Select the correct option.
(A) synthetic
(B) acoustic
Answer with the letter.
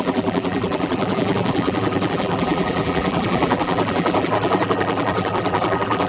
A